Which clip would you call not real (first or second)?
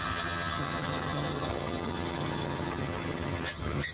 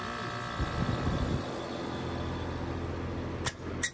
first